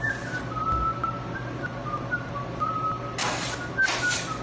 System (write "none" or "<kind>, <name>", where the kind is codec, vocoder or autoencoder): none